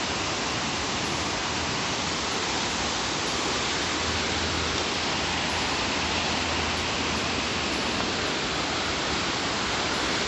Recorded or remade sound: recorded